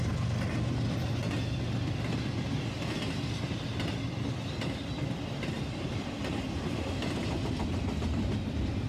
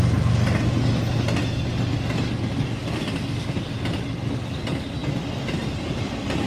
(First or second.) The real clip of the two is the second